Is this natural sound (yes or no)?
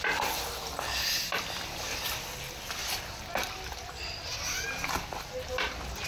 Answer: yes